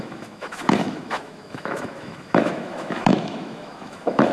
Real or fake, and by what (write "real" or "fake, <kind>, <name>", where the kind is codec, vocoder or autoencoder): fake, autoencoder, DAC-VAE